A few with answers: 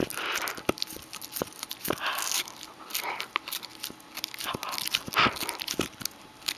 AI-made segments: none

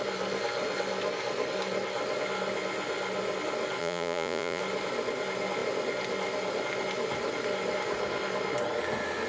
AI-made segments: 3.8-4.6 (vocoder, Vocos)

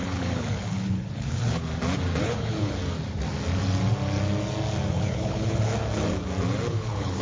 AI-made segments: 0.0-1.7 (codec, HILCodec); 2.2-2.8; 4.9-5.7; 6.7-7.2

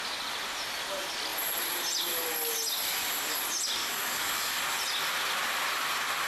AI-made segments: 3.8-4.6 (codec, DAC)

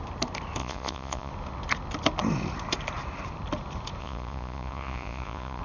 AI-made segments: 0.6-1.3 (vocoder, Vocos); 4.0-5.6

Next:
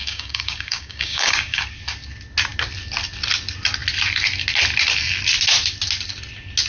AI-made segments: 0.0-1.6 (codec, DAC)

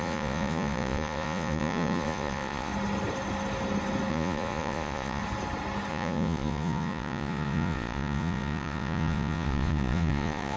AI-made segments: 0.0-2.7 (vocoder, Vocos); 4.1-5.2; 5.9-10.6